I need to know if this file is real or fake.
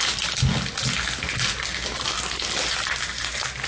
real